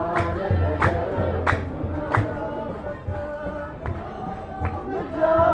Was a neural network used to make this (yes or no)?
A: no